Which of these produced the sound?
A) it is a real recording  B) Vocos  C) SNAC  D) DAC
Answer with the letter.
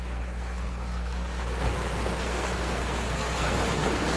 C